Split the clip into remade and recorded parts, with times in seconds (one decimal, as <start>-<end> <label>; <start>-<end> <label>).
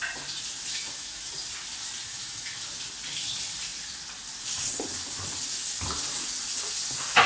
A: 0.0-0.7 recorded; 0.7-1.3 remade; 1.3-2.1 recorded; 2.1-2.6 remade; 2.6-7.3 recorded